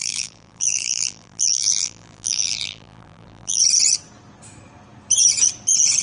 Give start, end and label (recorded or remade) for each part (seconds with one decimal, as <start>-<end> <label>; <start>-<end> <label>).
0.0-3.6 remade; 3.6-6.0 recorded